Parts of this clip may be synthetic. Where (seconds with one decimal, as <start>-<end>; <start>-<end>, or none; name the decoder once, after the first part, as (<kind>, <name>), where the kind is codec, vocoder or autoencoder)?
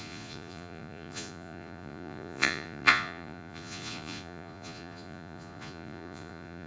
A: 0.0-6.7 (vocoder, Vocos)